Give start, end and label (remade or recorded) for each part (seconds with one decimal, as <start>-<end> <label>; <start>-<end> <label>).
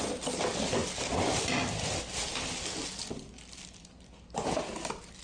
0.0-5.2 recorded